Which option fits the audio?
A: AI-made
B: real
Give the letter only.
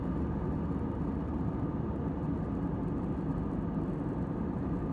B